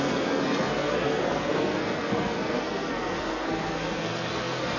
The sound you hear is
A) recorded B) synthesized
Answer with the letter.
B